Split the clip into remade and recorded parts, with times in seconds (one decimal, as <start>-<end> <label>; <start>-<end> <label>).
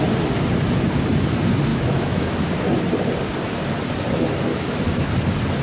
0.0-1.7 recorded; 1.7-2.3 remade; 2.3-4.5 recorded; 4.5-5.1 remade; 5.1-5.6 recorded